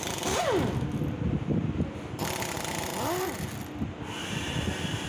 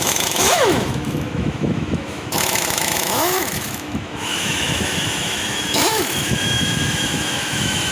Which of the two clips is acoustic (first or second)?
first